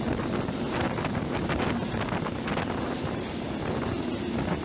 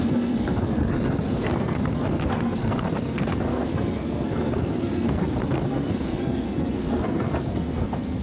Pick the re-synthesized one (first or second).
second